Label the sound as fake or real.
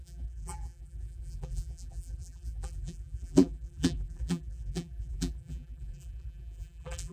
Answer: fake